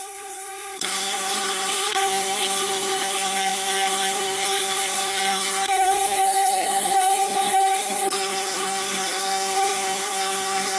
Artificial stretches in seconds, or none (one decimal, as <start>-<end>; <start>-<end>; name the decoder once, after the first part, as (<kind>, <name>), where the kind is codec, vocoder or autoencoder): 0.0-10.8 (codec, SNAC)